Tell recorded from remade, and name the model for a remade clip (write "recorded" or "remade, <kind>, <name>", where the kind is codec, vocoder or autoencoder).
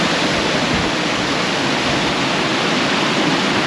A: recorded